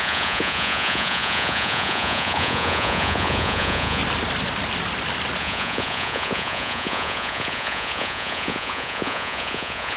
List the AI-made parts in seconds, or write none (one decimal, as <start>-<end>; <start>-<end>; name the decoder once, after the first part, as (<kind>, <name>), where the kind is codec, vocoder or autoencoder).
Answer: 0.0-4.0 (vocoder, Vocos); 5.4-10.0

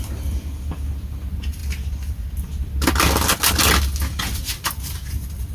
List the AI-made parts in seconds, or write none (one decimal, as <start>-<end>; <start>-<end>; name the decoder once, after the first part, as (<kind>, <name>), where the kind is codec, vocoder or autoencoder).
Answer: none

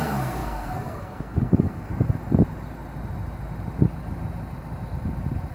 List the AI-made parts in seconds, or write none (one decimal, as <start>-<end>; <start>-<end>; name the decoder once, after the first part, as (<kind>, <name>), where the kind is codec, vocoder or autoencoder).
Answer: 0.0-1.9 (codec, SNAC)

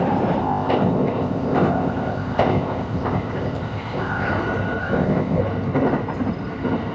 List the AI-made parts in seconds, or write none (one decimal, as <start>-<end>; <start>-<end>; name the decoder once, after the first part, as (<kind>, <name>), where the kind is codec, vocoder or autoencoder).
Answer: 0.4-4.3 (codec, ZipCodec); 4.8-5.4